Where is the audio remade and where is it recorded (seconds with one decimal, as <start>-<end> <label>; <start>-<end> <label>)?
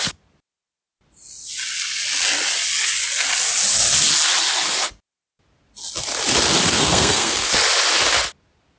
0.0-6.7 recorded; 6.7-7.5 remade; 7.5-8.8 recorded